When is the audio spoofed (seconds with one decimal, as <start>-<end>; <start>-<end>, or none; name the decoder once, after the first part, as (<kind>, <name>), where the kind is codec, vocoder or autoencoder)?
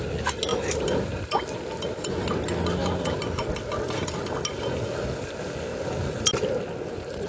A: 0.5-1.1 (vocoder, BigVGAN v2); 2.8-3.6; 5.7-6.2